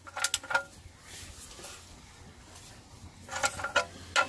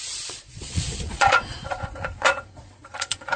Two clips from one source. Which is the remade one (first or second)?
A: second